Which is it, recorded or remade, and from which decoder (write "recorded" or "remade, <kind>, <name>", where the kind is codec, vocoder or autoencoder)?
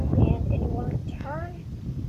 remade, vocoder, BigVGAN v2